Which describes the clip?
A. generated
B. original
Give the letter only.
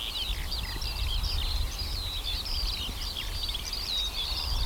B